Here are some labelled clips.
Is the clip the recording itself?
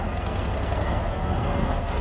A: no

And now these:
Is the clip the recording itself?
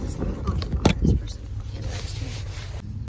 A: yes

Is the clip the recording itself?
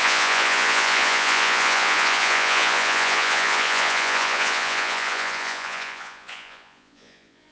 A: no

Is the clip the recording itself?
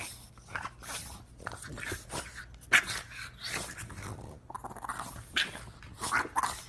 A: yes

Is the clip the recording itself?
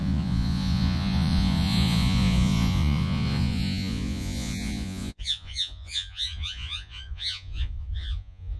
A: no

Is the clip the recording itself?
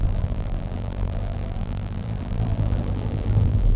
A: no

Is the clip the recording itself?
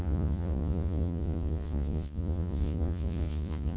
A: no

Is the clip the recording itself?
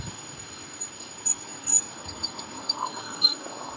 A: no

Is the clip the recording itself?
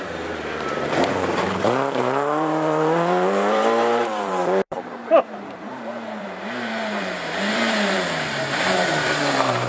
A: no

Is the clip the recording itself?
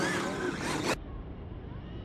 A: yes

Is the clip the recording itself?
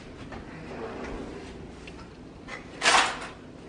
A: yes